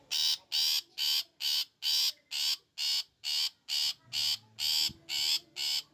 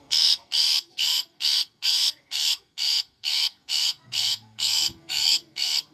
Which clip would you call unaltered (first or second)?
first